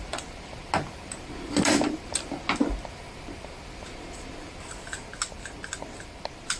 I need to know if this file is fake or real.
real